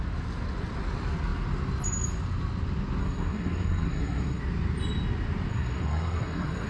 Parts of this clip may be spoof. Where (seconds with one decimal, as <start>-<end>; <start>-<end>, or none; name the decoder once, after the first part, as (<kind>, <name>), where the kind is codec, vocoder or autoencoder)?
3.0-4.4 (codec, SNAC); 5.5-6.7